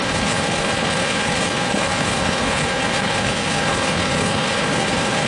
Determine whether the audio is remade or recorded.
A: remade